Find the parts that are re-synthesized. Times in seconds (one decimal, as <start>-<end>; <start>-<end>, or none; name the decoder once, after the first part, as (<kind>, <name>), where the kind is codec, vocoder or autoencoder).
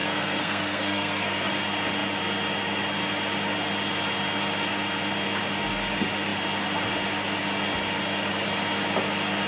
0.0-1.5 (codec, SNAC)